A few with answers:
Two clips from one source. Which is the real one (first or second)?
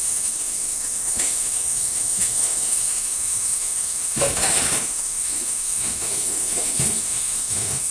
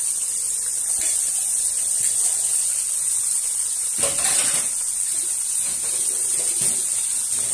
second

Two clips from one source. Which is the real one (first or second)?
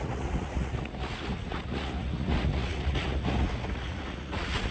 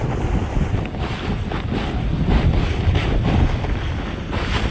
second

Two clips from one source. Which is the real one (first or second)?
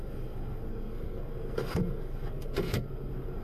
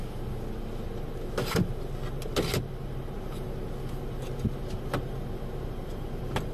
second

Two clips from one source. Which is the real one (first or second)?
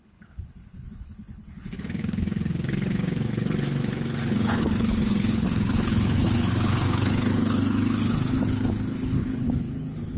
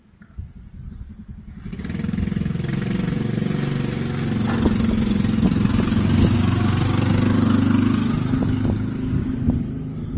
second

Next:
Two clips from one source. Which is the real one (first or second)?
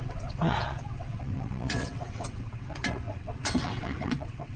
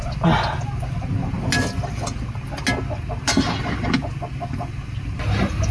second